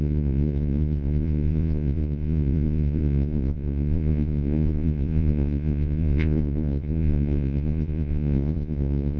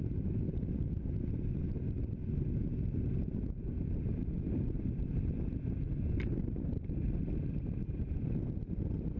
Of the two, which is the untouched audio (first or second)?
second